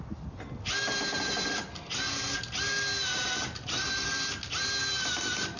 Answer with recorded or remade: recorded